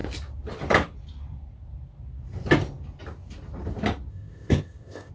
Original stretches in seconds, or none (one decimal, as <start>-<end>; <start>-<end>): 0.0-4.1